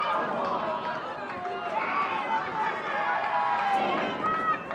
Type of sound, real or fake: real